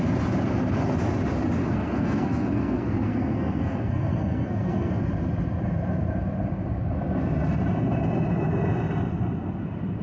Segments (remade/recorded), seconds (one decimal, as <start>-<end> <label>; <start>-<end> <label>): 0.0-1.6 recorded; 1.6-4.9 remade; 4.9-10.0 recorded